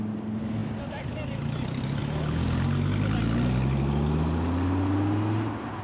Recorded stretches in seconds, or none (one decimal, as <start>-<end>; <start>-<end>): 0.0-5.8